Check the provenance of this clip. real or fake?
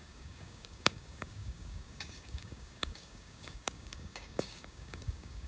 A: fake